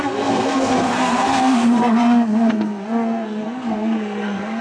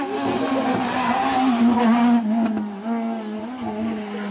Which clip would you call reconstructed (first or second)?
first